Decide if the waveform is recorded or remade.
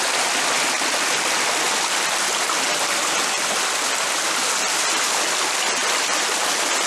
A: recorded